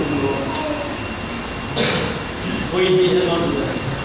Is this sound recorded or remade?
recorded